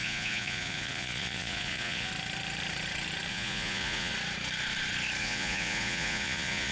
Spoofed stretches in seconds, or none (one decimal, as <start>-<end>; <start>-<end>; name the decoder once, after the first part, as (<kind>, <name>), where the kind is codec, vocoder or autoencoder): 0.0-2.1 (vocoder, Vocos); 3.3-4.1; 5.2-6.7